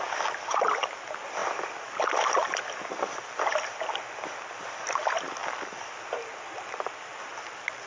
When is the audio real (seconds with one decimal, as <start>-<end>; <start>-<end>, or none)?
0.0-7.9